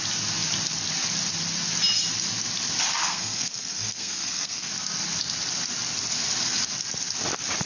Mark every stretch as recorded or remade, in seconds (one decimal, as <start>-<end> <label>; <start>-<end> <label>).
0.0-3.0 recorded; 3.0-4.7 remade; 4.7-7.7 recorded